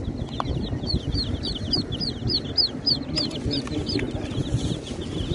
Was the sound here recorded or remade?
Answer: recorded